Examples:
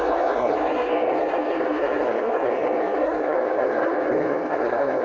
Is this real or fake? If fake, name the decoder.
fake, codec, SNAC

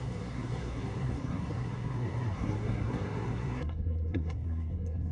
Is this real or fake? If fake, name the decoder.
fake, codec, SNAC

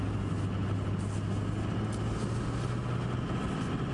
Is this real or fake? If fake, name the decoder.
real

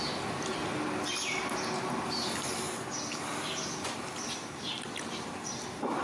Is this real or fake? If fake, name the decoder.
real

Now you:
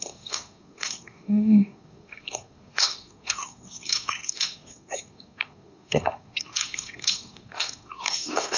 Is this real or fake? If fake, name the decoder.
fake, codec, SNAC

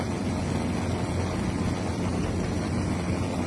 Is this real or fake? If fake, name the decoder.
real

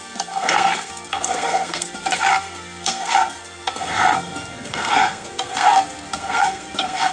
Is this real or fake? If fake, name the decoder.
fake, codec, SNAC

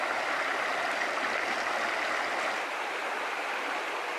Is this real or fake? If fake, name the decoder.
real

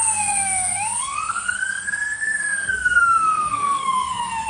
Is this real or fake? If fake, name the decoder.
fake, codec, SNAC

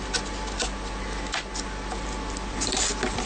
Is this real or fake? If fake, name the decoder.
real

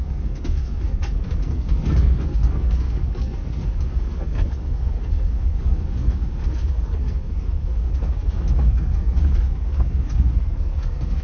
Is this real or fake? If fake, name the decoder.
fake, codec, SNAC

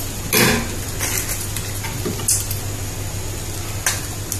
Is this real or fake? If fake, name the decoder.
real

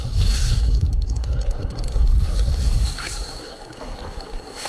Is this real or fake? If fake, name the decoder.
fake, codec, SNAC